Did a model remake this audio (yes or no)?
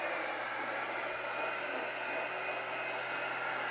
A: no